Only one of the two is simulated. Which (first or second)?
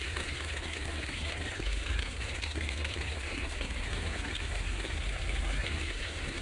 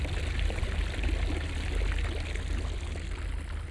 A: first